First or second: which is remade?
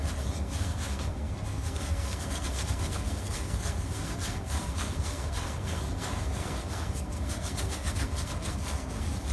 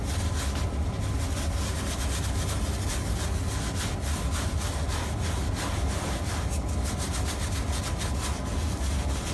first